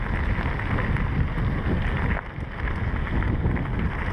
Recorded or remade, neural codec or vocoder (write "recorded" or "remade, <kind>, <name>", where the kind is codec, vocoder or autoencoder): recorded